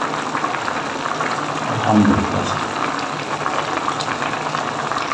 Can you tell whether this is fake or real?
real